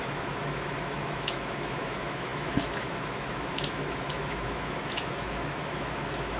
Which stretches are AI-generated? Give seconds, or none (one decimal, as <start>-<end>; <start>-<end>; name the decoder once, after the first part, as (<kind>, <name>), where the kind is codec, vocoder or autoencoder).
0.0-6.4 (autoencoder, DAC-VAE)